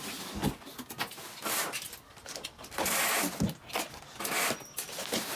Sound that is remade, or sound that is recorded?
recorded